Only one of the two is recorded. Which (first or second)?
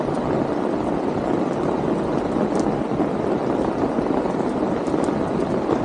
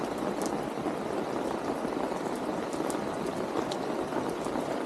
first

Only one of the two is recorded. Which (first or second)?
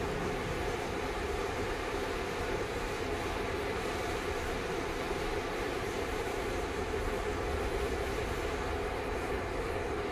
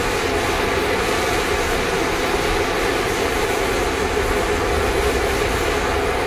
second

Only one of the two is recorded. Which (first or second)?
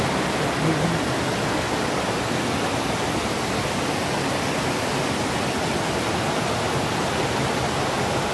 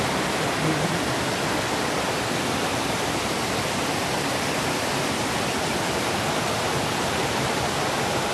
first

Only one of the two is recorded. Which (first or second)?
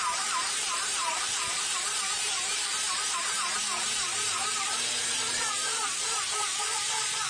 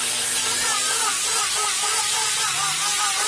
second